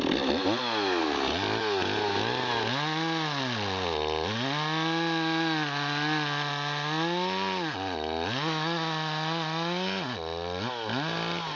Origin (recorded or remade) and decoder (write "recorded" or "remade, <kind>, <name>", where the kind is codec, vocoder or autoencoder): recorded